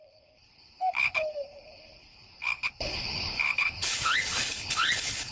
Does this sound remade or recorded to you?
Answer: remade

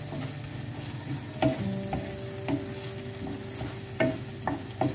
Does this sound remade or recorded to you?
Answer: recorded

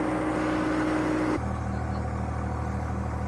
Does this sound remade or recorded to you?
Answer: recorded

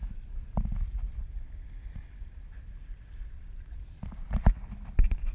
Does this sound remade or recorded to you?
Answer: recorded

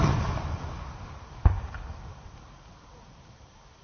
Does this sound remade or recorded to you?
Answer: recorded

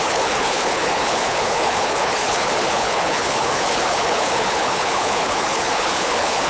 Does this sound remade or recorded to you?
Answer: remade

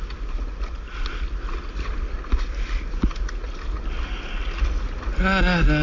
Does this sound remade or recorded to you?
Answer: recorded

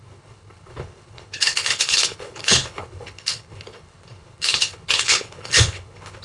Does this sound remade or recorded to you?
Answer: remade